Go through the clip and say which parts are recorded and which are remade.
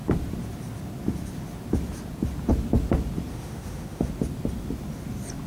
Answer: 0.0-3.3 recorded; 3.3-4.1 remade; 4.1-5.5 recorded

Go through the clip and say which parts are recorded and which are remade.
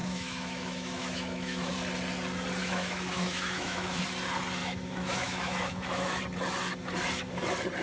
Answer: 0.0-1.7 remade; 1.7-2.6 recorded; 2.6-4.0 remade; 4.0-4.6 recorded; 4.6-6.2 remade; 6.2-7.8 recorded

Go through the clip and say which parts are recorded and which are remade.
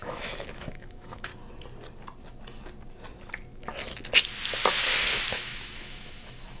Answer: 0.0-1.3 remade; 1.3-5.3 recorded; 5.3-6.6 remade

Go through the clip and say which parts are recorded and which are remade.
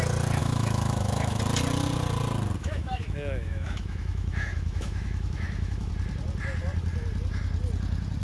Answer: 0.0-0.4 recorded; 0.4-1.4 remade; 1.4-2.6 recorded; 2.6-5.9 remade; 5.9-8.2 recorded